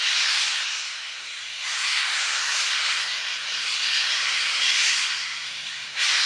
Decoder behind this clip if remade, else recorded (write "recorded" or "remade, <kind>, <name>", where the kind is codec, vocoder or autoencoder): remade, codec, SNAC